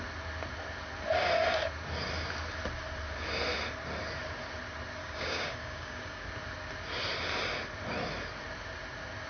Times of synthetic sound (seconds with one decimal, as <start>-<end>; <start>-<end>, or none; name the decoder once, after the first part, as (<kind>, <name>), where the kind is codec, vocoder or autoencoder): 5.0-6.3 (codec, DAC)